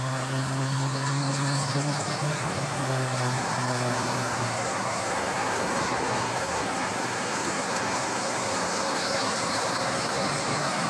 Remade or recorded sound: remade